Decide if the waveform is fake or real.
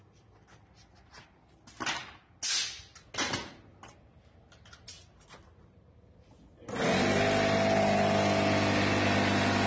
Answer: real